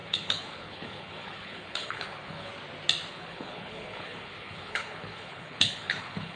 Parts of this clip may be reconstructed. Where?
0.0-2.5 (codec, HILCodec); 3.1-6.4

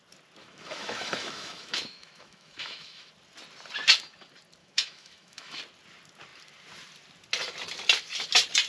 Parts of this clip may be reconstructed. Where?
0.4-3.1 (autoencoder, DAC-VAE); 4.6-5.6

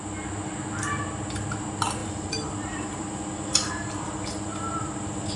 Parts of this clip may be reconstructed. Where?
2.0-5.4 (vocoder, BigVGAN v2)